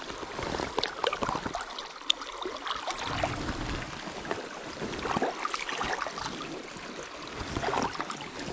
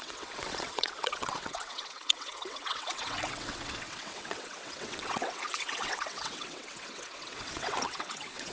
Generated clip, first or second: second